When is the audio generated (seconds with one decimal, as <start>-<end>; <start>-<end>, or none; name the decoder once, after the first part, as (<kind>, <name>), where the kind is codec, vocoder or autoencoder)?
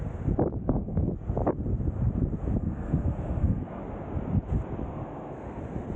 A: 0.6-1.1 (codec, SNAC); 2.6-3.8; 4.8-5.6